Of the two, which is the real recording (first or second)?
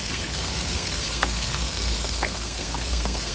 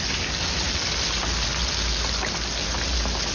second